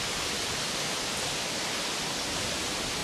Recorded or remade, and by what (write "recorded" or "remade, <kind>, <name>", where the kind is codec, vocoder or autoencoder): recorded